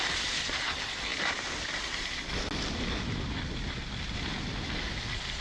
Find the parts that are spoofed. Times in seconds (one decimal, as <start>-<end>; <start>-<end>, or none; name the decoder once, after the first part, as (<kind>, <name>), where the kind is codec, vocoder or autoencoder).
none